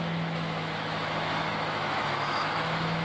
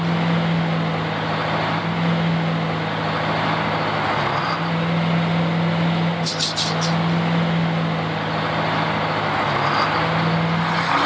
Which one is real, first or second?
second